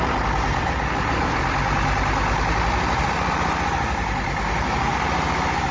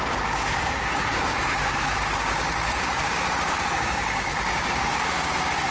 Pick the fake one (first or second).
second